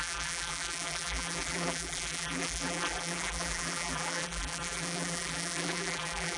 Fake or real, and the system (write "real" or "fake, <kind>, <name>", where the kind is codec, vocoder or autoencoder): fake, vocoder, BigVGAN v2